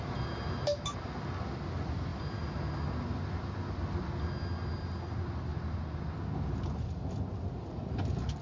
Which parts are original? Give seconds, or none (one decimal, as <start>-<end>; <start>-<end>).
0.0-8.4